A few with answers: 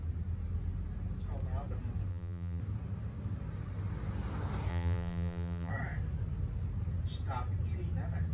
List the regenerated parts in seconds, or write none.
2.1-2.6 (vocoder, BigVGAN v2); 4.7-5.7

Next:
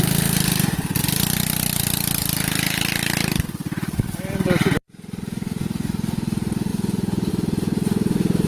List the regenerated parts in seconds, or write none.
0.0-6.7 (vocoder, BigVGAN v2); 7.3-8.5